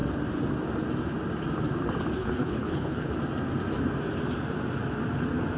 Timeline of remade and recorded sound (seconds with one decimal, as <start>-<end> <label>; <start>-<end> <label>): 0.0-2.2 recorded; 2.2-3.1 remade; 3.1-5.6 recorded